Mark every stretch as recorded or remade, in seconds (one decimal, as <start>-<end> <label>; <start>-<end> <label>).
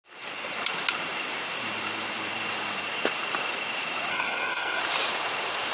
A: 0.0-4.1 recorded; 4.1-4.8 remade; 4.8-5.7 recorded